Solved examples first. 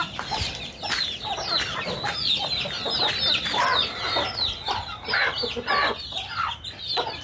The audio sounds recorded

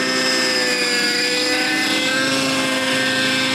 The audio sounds recorded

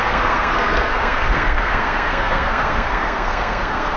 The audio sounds remade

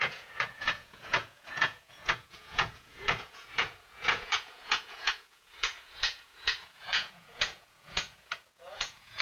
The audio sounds remade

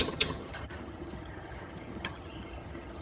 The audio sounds remade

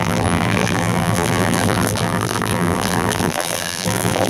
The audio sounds remade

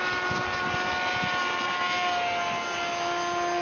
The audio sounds recorded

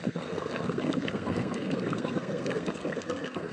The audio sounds remade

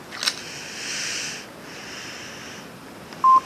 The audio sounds recorded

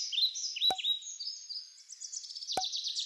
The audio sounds recorded